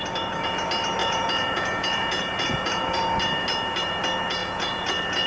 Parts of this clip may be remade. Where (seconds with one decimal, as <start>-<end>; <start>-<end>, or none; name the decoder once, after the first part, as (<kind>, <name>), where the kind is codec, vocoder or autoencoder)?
1.0-3.0 (vocoder, Vocos); 4.4-5.3